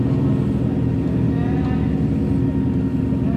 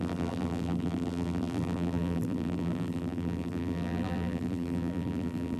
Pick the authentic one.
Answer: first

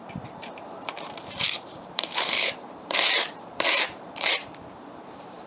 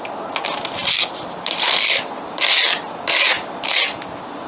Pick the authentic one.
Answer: second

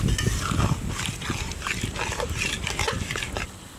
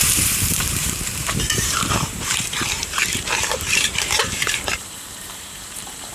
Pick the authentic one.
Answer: first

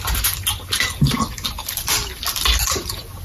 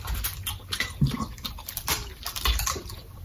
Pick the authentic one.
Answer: first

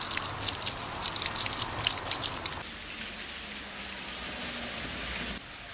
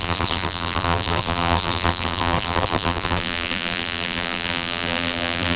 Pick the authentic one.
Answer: first